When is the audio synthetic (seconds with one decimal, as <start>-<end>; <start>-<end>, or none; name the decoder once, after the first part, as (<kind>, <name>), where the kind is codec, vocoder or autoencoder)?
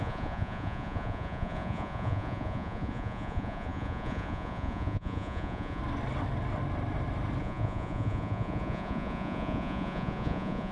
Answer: 0.0-5.8 (vocoder, Vocos); 7.4-10.7